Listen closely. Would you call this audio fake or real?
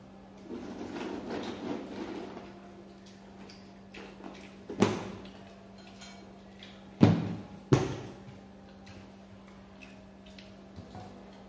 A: real